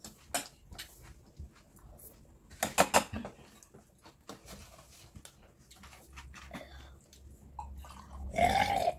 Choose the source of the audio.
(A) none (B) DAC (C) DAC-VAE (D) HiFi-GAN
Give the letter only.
A